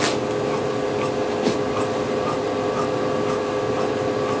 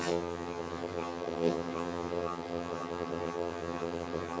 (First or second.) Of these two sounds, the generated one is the second